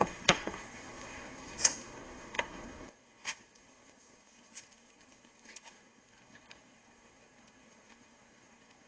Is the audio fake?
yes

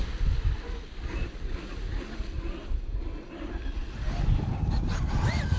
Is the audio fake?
no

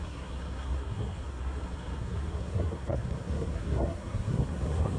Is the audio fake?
yes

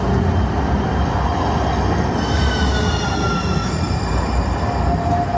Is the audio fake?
no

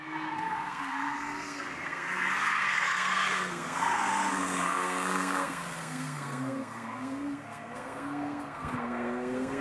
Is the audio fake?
yes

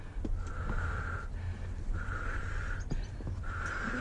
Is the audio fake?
no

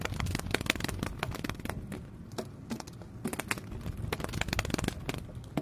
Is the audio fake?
no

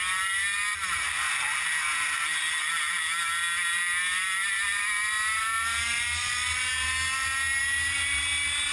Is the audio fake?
no